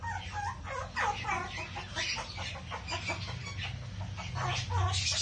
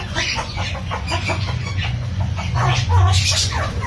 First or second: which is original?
first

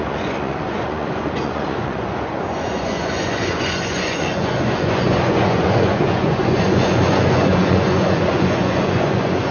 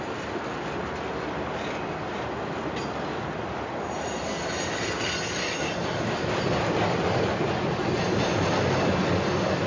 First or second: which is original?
second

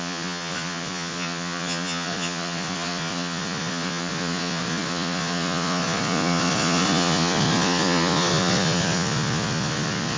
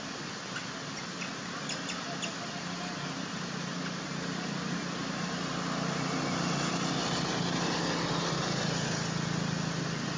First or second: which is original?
second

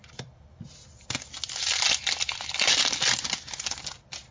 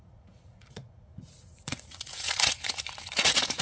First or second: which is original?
first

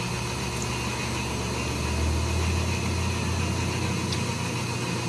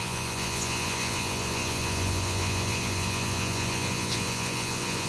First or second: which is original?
first